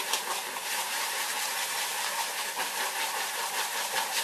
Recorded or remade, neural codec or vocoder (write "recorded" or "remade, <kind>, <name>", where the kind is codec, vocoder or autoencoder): remade, vocoder, BigVGAN v2